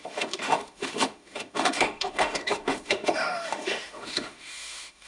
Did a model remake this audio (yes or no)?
yes